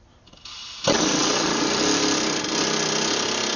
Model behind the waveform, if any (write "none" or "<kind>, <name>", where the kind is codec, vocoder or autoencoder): none